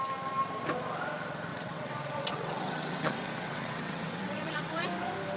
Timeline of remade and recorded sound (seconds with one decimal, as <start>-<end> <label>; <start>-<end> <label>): 0.0-1.5 recorded; 1.5-4.7 remade; 4.7-5.4 recorded